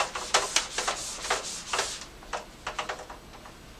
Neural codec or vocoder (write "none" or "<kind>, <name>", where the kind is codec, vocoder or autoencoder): none